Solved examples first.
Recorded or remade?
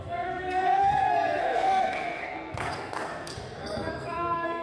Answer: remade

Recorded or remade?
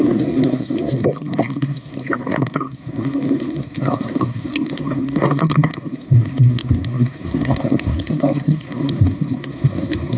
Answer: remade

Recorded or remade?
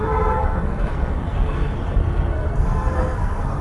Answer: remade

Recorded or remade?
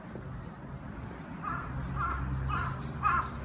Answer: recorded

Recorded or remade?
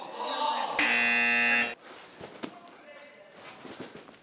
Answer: recorded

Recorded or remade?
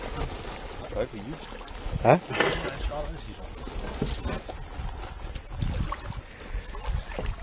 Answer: recorded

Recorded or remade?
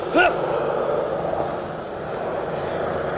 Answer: recorded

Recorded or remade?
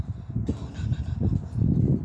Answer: recorded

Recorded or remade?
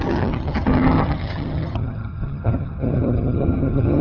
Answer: remade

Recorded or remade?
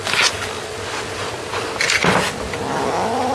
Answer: recorded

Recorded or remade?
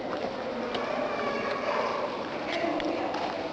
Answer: recorded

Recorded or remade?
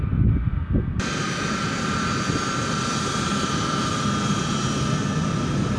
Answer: recorded